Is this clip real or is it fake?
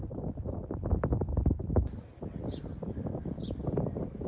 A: real